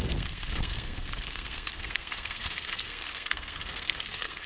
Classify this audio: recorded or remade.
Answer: remade